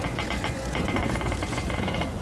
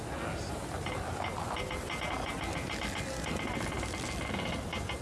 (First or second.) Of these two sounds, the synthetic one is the first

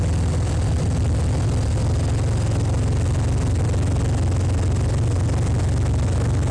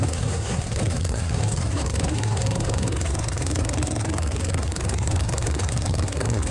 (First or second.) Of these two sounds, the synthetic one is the second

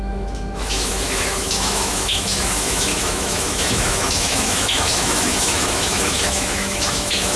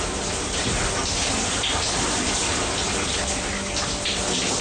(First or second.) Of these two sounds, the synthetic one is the first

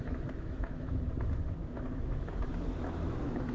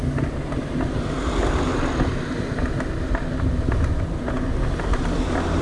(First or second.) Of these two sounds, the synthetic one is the first